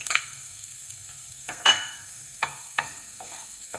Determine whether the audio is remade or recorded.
remade